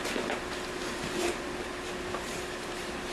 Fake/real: real